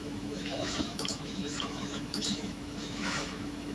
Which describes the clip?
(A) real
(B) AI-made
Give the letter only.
B